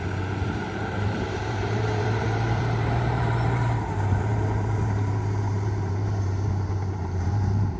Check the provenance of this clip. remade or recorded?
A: remade